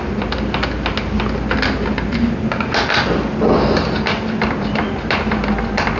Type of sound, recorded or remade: recorded